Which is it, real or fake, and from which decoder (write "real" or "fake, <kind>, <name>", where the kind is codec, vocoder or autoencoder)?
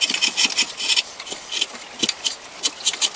real